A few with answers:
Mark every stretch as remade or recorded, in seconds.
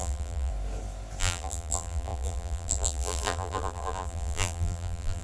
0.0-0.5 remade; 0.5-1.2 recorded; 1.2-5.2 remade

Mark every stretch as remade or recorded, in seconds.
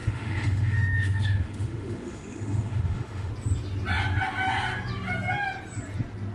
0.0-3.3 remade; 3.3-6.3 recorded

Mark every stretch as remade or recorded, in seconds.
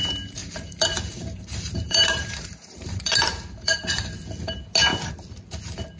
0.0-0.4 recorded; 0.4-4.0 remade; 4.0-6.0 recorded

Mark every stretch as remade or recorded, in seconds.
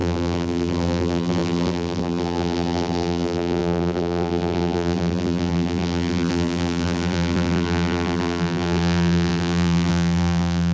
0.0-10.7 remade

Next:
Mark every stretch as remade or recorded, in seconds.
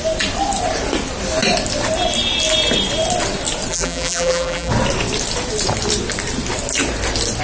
0.0-3.7 recorded; 3.7-4.7 remade; 4.7-7.4 recorded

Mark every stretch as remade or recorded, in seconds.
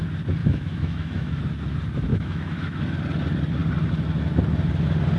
0.0-0.4 recorded; 0.4-1.4 remade; 1.4-2.1 recorded; 2.1-2.8 remade; 2.8-5.2 recorded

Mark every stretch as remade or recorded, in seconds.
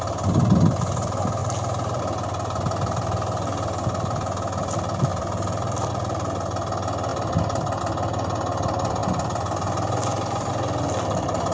0.0-1.4 recorded; 1.4-2.0 remade; 2.0-5.1 recorded; 5.1-5.9 remade; 5.9-7.1 recorded; 7.1-7.8 remade; 7.8-11.5 recorded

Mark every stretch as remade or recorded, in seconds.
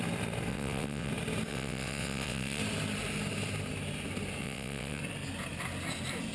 0.0-0.5 recorded; 0.5-1.1 remade; 1.1-1.5 recorded; 1.5-2.6 remade; 2.6-4.4 recorded; 4.4-5.0 remade; 5.0-6.3 recorded